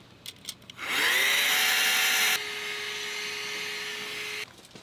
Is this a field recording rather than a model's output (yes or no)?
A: yes